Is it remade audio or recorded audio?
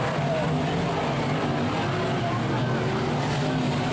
recorded